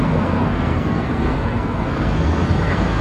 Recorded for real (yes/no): no